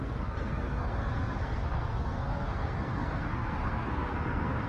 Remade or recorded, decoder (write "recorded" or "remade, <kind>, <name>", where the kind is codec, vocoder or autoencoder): remade, codec, SNAC